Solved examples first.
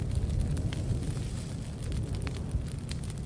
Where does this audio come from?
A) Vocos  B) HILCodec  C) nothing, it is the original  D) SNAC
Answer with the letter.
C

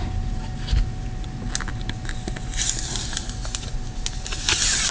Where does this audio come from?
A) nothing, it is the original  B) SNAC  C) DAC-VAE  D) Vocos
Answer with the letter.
A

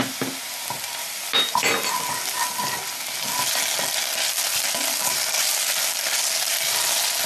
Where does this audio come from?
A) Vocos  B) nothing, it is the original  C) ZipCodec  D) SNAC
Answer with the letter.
B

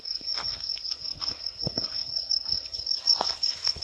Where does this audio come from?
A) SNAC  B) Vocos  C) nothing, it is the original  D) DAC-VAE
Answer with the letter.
A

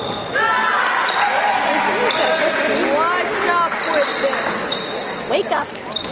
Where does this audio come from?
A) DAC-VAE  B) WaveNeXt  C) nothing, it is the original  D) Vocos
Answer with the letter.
C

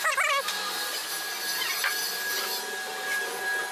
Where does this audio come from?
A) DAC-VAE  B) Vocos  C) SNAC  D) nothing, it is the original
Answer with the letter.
D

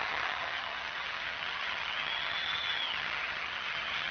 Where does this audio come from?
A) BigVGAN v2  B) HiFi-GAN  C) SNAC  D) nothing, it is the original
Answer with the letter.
B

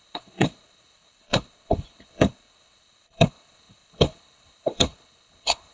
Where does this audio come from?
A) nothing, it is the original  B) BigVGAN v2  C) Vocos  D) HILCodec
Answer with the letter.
D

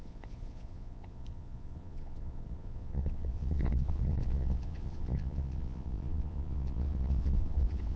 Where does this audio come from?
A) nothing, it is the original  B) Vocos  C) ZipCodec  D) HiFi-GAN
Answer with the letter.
B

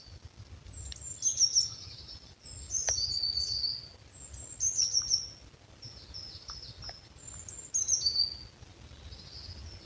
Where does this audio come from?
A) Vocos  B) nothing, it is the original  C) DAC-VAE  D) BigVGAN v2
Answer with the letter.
B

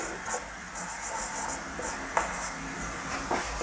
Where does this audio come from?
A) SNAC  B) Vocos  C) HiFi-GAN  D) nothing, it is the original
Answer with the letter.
D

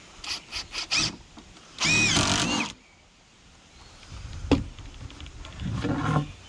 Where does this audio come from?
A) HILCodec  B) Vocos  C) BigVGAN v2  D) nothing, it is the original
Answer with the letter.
D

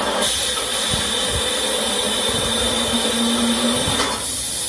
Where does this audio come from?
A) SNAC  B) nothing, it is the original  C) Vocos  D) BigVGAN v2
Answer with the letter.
D